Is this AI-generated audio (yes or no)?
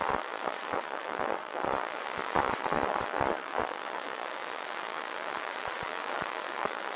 yes